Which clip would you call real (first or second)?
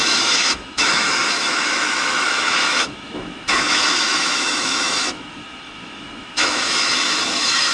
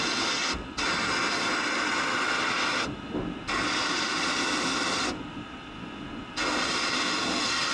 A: second